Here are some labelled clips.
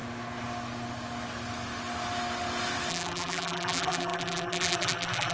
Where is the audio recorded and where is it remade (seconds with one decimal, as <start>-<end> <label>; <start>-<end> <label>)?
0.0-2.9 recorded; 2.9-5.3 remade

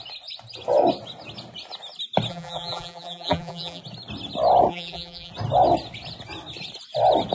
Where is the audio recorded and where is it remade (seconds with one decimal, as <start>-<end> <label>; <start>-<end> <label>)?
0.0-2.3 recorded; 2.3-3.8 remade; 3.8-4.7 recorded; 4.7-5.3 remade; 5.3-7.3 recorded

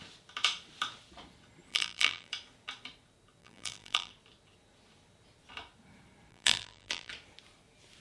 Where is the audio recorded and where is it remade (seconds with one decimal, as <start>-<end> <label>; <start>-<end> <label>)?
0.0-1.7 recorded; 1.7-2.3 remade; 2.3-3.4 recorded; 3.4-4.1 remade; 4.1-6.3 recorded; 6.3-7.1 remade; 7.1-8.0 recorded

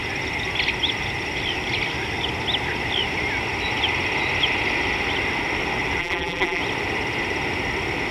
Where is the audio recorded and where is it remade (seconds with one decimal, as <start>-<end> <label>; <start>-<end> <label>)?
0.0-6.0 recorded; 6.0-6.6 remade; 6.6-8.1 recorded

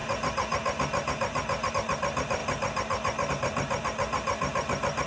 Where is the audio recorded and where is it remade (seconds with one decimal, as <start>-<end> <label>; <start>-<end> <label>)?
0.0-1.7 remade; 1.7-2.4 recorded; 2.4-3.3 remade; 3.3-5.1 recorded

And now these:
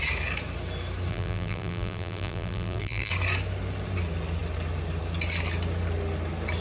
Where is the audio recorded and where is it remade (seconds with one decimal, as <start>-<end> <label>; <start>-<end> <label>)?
0.0-1.1 recorded; 1.1-3.1 remade; 3.1-6.6 recorded